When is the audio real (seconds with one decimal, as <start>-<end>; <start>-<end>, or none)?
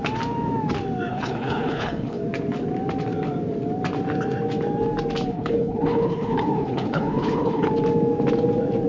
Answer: 0.0-1.1; 2.2-5.3; 7.7-8.9